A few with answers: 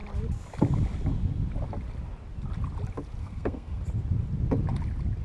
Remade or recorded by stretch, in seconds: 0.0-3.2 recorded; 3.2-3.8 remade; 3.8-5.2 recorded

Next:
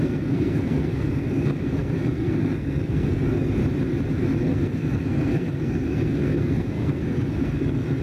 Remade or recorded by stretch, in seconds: 0.0-3.6 remade; 3.6-4.4 recorded; 4.4-8.0 remade

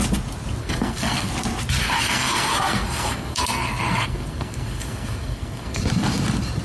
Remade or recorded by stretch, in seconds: 0.0-0.6 recorded; 0.6-1.3 remade; 1.3-1.8 recorded; 1.8-5.8 remade; 5.8-6.6 recorded

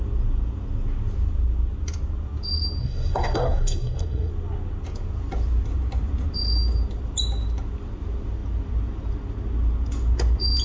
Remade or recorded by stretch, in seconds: 0.0-2.8 recorded; 2.8-4.3 remade; 4.3-10.6 recorded

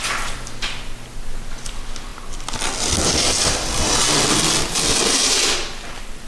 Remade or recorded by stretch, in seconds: 0.0-6.3 recorded

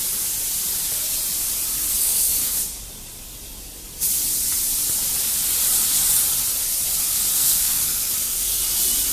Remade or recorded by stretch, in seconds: 0.0-1.9 recorded; 1.9-2.6 remade; 2.6-7.3 recorded; 7.3-8.6 remade; 8.6-9.1 recorded